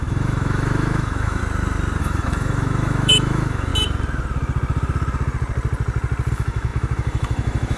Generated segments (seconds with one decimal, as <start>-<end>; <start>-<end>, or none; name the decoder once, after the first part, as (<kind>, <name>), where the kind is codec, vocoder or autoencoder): 0.0-1.4 (autoencoder, DAC-VAE); 2.0-3.7; 6.3-7.8